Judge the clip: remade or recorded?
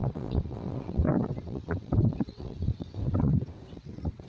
remade